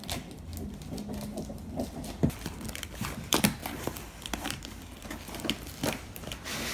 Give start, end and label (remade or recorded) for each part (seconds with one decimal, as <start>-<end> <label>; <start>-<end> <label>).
0.0-0.5 remade; 0.5-2.5 recorded; 2.5-3.6 remade; 3.6-6.7 recorded